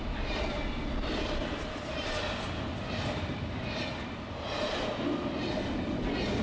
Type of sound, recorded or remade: recorded